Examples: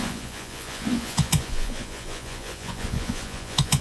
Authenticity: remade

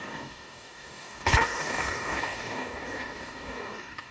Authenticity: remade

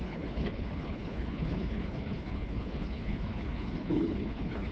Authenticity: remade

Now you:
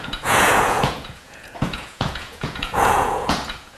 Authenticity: remade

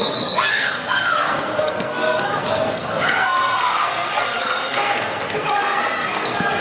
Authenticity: remade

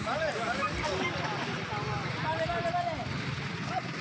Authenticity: recorded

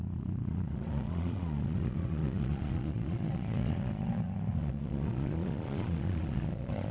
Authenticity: remade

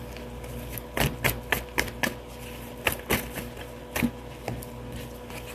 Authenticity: recorded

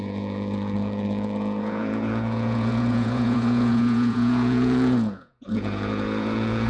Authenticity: remade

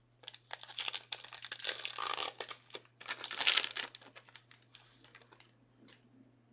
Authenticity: recorded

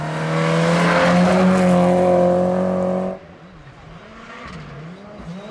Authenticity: recorded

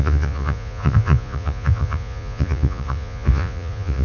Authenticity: remade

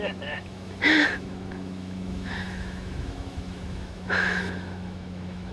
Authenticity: remade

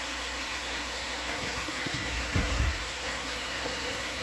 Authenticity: remade